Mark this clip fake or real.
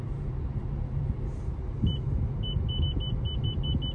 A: real